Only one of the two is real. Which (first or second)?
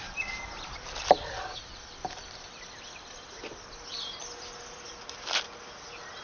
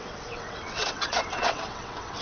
first